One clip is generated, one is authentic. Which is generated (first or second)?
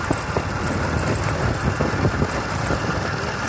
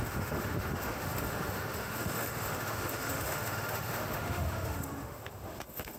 second